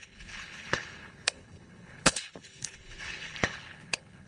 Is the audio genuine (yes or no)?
no